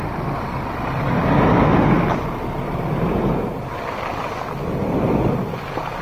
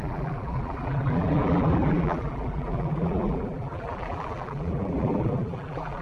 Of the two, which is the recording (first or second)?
first